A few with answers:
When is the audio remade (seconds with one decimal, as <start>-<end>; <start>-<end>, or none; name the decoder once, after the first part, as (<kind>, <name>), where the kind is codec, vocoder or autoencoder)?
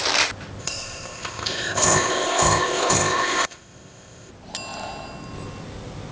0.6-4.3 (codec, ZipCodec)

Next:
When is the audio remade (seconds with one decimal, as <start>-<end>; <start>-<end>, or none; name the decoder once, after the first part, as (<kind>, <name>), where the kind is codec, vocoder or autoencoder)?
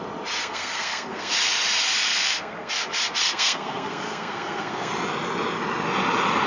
0.4-1.3 (codec, SNAC); 2.1-2.7; 3.2-4.9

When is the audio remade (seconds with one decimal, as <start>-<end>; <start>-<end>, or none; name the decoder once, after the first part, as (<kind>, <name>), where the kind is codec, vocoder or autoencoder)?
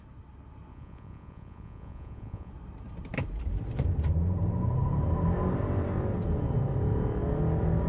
0.7-2.5 (vocoder, Vocos)